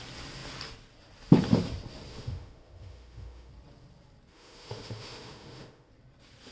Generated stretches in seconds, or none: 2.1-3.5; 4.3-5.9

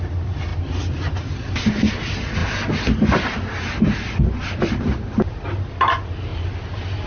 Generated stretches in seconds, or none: none

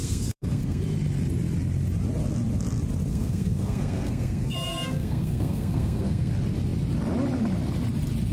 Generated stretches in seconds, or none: 0.0-0.8; 3.1-6.3

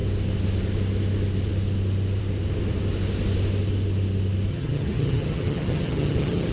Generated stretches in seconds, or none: 4.5-6.5